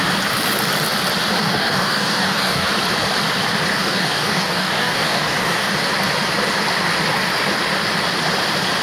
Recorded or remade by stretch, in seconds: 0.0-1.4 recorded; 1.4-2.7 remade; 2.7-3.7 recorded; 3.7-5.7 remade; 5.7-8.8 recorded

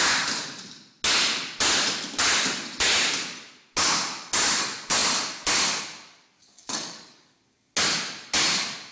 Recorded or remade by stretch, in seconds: 0.0-6.2 recorded; 6.2-7.7 remade; 7.7-8.9 recorded

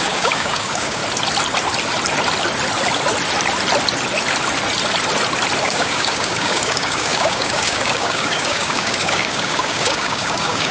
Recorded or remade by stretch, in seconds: 0.0-1.0 remade; 1.0-5.6 recorded; 5.6-10.7 remade

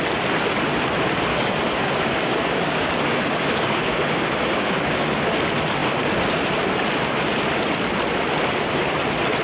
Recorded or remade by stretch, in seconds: 0.0-1.3 recorded; 1.3-5.3 remade; 5.3-9.4 recorded

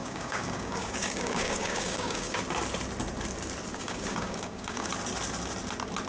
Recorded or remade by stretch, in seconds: 0.0-2.4 remade; 2.4-3.7 recorded; 3.7-4.9 remade; 4.9-6.1 recorded

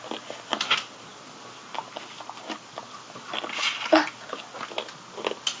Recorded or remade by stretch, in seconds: 0.0-5.6 recorded

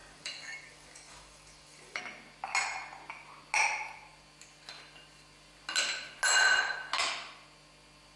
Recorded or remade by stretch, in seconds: 0.0-2.0 remade; 2.0-8.2 recorded